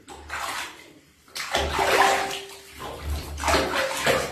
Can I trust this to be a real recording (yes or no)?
yes